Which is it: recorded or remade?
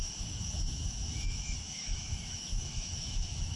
remade